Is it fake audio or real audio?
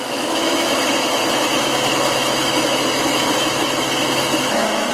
fake